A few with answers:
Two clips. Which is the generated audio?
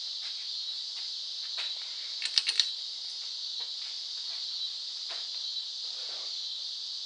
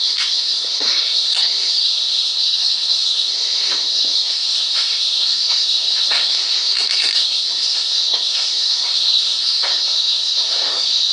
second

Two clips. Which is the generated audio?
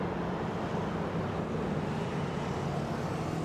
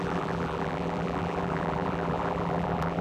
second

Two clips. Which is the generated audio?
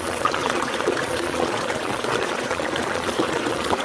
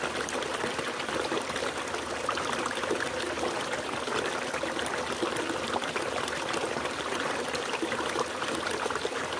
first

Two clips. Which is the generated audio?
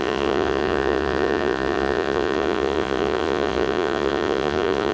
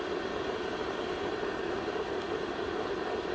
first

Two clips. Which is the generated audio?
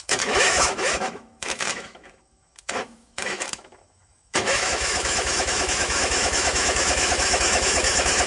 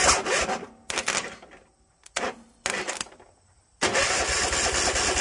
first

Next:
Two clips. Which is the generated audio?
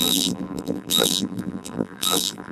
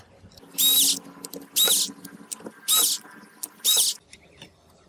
first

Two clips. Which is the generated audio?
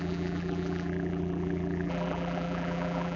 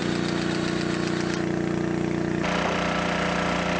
first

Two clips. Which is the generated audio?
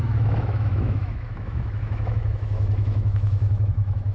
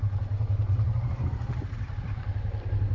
first